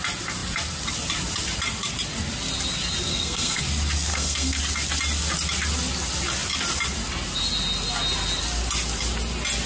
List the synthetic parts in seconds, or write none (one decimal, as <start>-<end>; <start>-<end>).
3.1-3.6; 4.1-4.6